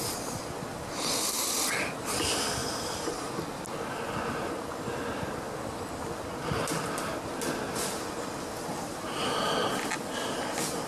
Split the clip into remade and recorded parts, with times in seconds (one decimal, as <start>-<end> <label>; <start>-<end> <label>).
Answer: 0.0-2.6 recorded; 2.6-3.3 remade; 3.3-10.9 recorded